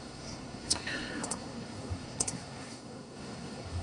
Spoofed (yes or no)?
yes